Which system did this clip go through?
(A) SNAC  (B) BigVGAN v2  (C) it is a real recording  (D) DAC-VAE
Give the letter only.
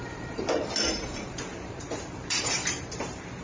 B